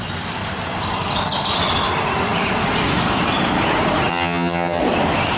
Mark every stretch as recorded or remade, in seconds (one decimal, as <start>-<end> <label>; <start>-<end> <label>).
0.0-4.1 recorded; 4.1-4.8 remade; 4.8-5.4 recorded